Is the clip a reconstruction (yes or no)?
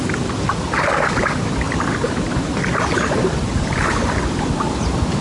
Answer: no